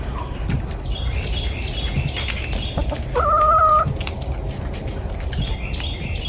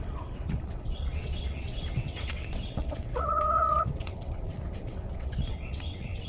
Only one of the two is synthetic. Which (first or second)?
second